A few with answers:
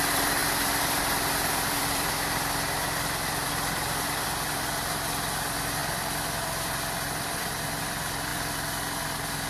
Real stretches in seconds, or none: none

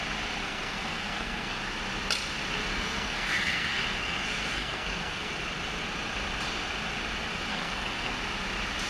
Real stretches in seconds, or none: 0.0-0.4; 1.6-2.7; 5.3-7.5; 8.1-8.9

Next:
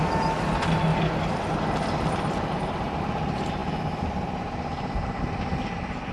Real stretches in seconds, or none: 0.0-6.1

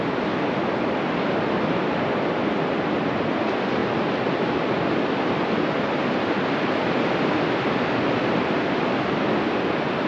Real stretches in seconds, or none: 0.0-10.1

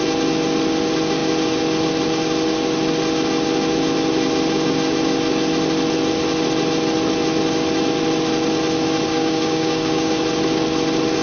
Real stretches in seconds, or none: 0.0-9.1; 10.1-11.2

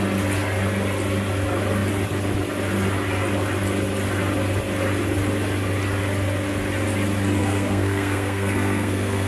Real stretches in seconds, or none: 0.0-7.4